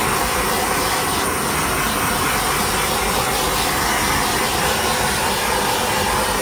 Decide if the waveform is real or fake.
real